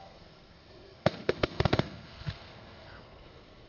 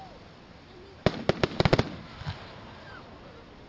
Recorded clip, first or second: second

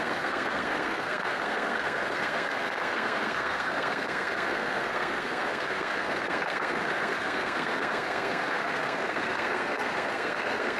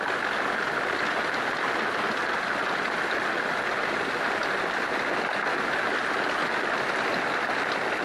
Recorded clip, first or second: second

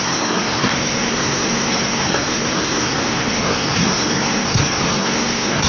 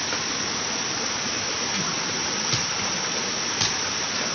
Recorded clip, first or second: second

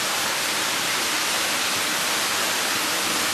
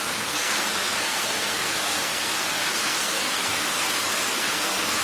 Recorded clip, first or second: first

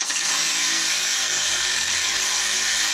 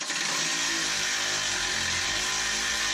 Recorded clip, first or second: second